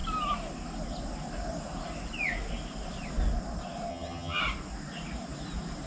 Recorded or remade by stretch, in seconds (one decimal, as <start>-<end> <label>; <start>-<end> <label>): 0.0-3.9 recorded; 3.9-4.4 remade; 4.4-5.9 recorded